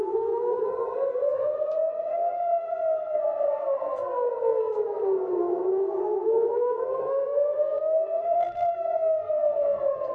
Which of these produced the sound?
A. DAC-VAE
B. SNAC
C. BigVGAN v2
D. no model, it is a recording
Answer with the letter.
B